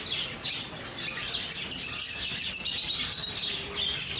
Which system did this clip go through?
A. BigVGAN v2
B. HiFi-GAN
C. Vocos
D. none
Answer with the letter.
D